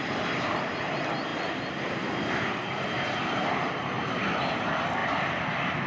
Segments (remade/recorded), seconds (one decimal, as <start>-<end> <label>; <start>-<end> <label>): 0.0-1.3 recorded; 1.3-4.4 remade; 4.4-5.0 recorded; 5.0-5.9 remade